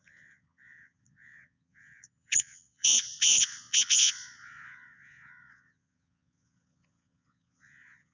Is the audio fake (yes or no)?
yes